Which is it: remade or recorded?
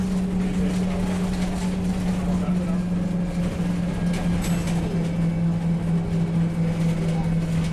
recorded